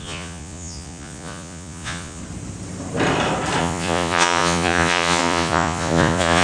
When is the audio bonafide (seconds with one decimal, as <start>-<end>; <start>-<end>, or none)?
2.2-3.6